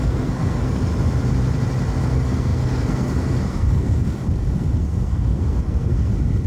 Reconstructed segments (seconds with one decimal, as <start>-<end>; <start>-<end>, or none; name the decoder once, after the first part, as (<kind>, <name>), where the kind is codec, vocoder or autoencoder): 0.0-0.9 (codec, SNAC); 2.0-6.5